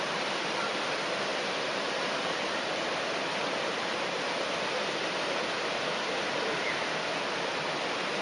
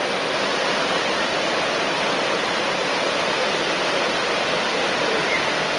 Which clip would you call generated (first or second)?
first